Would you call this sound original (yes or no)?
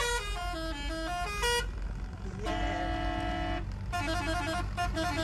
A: yes